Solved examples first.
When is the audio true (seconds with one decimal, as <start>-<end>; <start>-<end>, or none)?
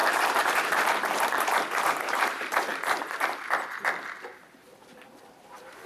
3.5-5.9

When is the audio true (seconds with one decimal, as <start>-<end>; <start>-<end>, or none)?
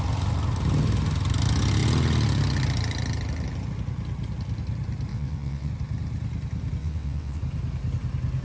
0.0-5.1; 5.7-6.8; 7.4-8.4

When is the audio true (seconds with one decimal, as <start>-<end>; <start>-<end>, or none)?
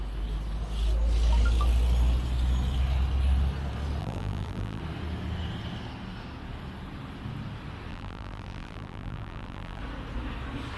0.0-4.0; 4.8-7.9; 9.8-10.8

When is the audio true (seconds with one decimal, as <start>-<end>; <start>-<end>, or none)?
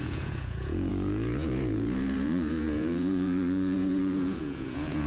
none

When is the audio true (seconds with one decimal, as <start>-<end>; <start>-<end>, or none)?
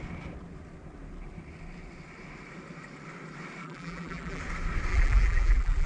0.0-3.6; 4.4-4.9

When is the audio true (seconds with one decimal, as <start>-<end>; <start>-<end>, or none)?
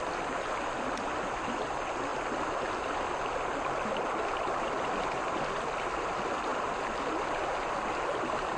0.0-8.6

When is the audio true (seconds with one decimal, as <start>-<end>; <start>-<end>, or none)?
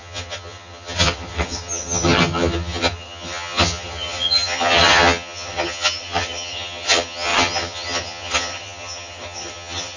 none